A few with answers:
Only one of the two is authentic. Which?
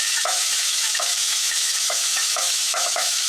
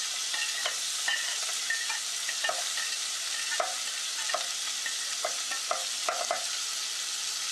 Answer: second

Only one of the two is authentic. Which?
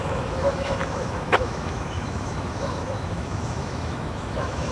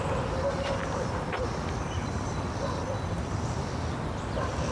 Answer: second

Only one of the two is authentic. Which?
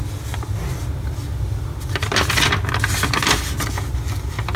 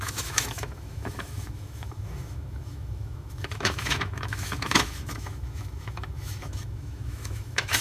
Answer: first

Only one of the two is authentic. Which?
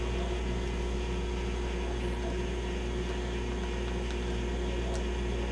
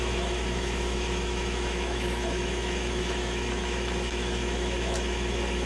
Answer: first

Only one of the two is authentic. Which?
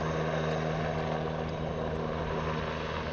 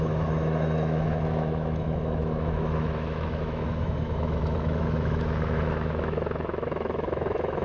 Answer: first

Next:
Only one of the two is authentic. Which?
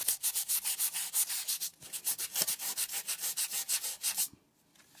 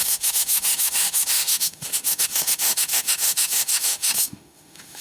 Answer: first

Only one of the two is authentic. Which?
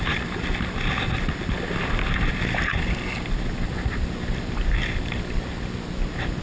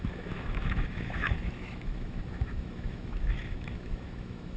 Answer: first